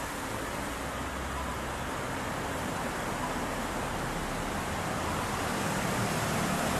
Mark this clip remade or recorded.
recorded